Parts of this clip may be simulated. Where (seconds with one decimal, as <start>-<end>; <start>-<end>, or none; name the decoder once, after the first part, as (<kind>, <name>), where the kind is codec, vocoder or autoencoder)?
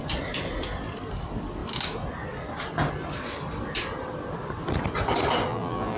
5.5-6.0 (vocoder, BigVGAN v2)